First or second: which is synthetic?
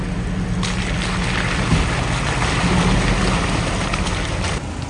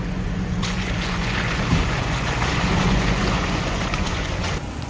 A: second